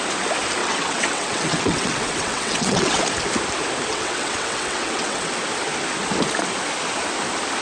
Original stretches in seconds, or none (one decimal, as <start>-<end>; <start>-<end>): 0.0-0.6; 3.0-3.9; 5.3-7.6